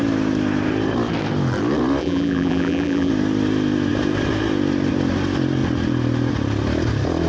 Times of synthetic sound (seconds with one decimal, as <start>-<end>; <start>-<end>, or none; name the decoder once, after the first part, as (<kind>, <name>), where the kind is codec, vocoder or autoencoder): 2.0-3.1 (vocoder, BigVGAN v2)